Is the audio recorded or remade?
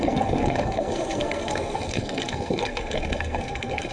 remade